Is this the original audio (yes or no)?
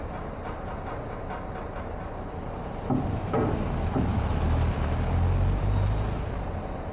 yes